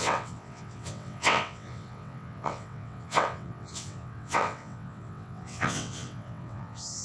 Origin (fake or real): fake